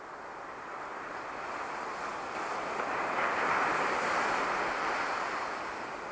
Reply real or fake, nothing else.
real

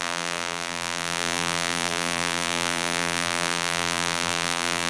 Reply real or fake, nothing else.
fake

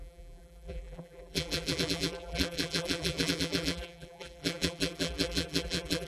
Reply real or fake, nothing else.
fake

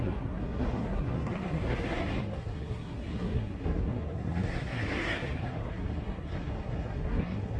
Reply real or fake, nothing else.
fake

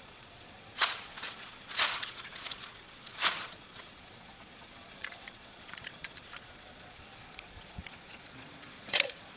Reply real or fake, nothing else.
fake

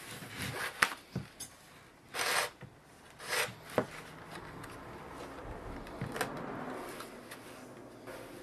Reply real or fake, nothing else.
real